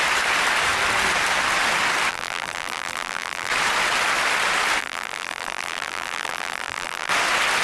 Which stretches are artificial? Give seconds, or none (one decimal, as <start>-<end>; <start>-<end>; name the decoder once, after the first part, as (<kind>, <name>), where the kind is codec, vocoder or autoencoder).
2.1-3.5 (vocoder, BigVGAN v2); 4.8-7.1